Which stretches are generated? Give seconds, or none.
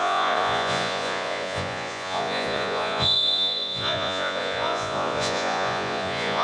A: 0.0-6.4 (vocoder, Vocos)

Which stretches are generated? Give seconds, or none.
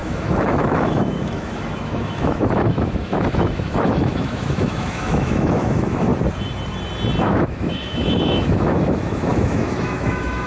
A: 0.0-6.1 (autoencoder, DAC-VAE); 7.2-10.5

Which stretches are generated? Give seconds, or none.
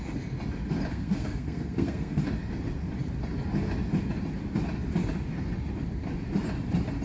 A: 0.9-2.2 (codec, SNAC)